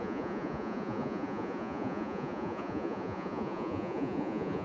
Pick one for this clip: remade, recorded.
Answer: remade